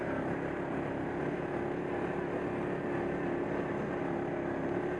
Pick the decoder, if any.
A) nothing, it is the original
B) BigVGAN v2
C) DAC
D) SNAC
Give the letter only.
A